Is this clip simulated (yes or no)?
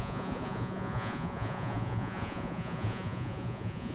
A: yes